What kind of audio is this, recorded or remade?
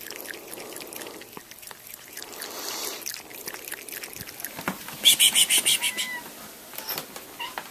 recorded